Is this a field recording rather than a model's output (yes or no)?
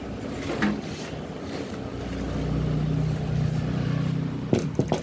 yes